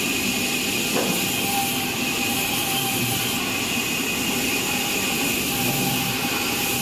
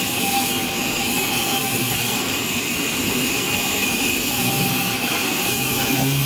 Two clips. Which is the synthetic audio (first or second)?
second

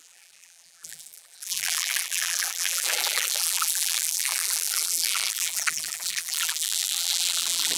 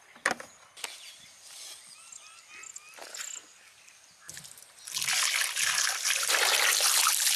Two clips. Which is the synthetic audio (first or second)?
first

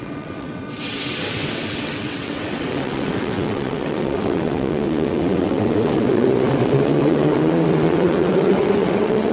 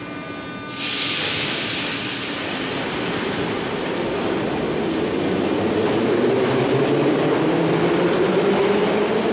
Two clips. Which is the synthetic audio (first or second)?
first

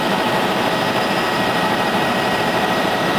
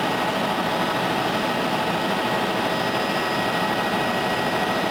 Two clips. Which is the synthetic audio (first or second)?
first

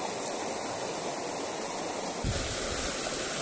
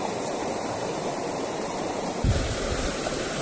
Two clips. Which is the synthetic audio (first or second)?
second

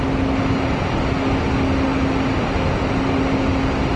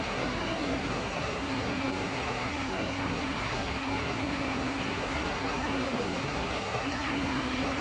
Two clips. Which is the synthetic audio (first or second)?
second